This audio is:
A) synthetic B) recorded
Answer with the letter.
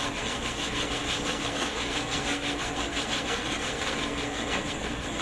A